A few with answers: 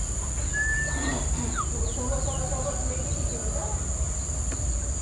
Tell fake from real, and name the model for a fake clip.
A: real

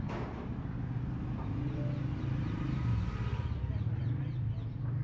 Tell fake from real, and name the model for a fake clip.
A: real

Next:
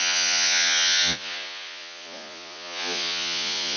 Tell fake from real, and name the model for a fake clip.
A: fake, vocoder, Vocos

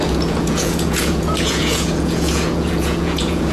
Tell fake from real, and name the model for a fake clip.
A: fake, vocoder, Vocos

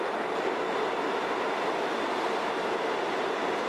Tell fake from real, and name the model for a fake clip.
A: real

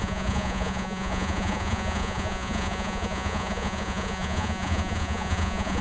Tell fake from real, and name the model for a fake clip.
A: fake, vocoder, Vocos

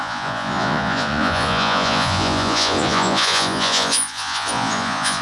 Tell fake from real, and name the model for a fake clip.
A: fake, vocoder, Vocos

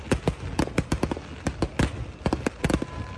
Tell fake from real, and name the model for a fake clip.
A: real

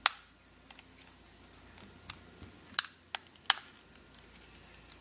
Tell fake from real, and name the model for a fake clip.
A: real